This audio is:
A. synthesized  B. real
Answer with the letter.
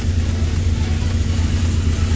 B